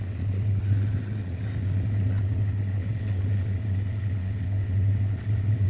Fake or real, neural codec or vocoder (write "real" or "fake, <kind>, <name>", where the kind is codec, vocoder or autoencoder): fake, vocoder, WaveNeXt